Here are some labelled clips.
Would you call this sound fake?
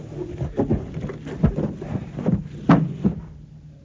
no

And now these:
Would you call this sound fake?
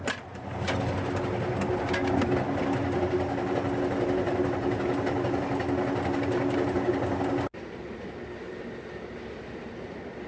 no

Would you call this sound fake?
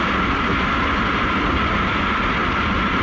no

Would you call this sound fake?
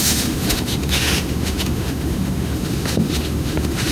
yes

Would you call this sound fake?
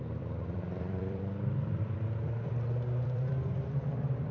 yes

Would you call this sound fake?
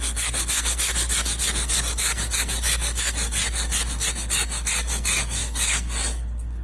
yes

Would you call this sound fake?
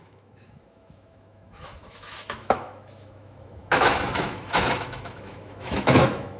yes